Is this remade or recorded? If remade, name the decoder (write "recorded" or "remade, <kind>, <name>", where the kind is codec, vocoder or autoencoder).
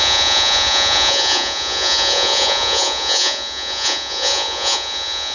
remade, vocoder, Vocos